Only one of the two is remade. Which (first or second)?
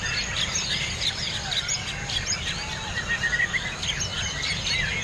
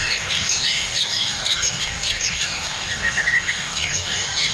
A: second